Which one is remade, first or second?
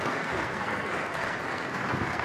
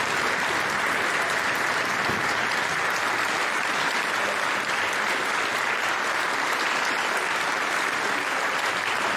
first